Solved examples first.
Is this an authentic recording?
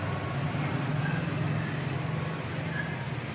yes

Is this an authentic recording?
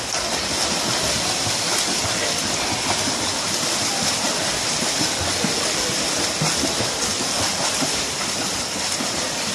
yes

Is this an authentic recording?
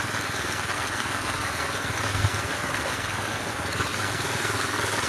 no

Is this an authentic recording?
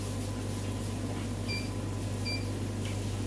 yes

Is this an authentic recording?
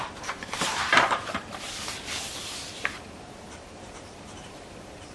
no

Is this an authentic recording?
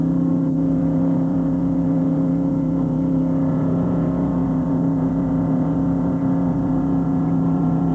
no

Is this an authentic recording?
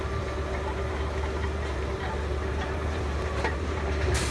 no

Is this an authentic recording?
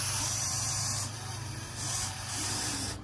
no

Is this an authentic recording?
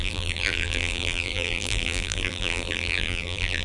no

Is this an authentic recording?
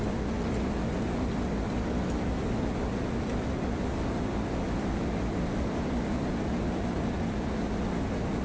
yes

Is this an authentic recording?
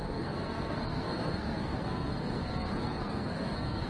no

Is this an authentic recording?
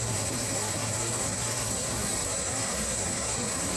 no